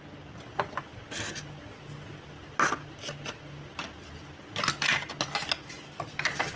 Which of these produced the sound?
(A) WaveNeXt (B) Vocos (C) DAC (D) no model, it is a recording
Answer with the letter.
D